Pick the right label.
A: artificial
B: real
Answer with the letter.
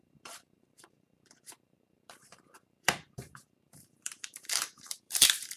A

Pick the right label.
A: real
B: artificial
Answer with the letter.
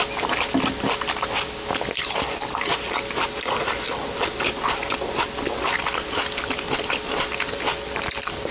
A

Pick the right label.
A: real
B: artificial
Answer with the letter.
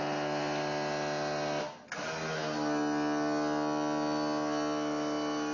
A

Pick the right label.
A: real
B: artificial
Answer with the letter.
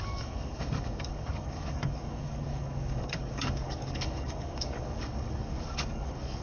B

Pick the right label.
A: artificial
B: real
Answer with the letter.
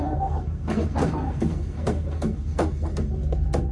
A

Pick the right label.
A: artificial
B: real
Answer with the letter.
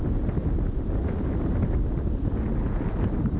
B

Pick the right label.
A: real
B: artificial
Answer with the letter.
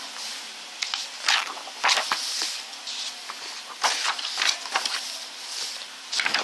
A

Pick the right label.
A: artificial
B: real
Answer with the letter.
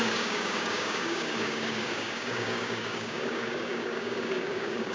A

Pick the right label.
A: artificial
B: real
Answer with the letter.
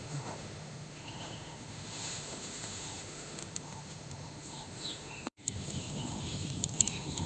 A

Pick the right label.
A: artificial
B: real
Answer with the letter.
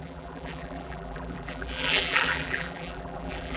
A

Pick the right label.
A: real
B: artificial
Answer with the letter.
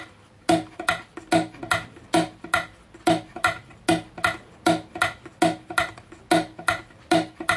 A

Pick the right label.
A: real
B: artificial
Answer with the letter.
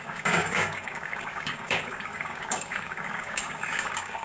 B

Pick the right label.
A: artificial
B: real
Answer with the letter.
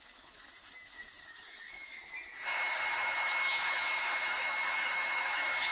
A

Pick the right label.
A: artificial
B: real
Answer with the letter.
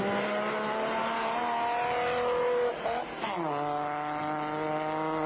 B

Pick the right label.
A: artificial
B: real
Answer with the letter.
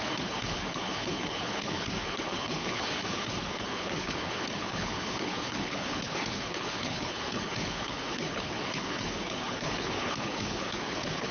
A